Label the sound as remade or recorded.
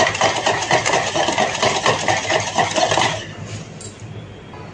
recorded